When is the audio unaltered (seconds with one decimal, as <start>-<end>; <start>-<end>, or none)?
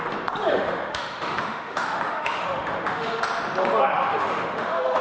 0.0-0.5; 3.2-3.9